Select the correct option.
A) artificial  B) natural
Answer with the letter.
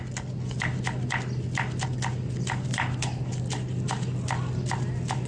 B